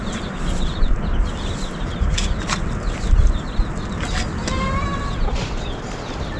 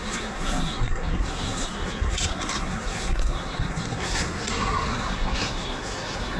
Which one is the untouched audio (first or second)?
first